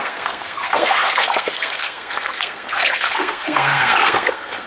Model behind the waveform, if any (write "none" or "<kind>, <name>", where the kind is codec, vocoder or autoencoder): codec, SNAC